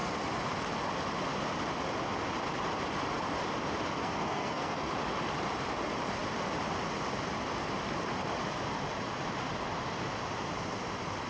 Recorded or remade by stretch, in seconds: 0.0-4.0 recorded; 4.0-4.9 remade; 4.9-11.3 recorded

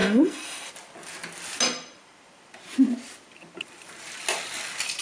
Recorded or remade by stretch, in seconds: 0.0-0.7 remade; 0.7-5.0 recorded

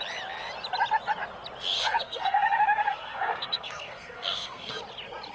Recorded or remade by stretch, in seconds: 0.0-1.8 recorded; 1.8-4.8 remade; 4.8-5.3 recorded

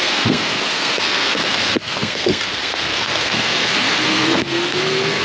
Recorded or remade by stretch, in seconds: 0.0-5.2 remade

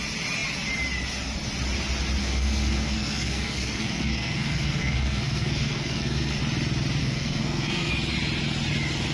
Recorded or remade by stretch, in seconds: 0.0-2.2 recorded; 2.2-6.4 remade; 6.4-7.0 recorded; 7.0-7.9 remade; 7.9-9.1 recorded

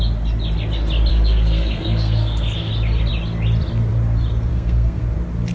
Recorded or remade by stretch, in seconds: 0.0-1.1 recorded; 1.1-2.7 remade; 2.7-4.5 recorded; 4.5-5.0 remade; 5.0-5.5 recorded

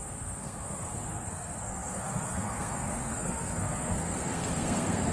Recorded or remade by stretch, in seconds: 0.0-5.1 remade

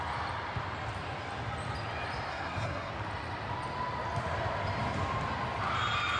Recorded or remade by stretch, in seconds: 0.0-2.3 recorded; 2.3-2.9 remade; 2.9-6.2 recorded